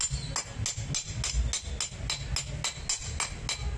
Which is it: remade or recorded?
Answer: recorded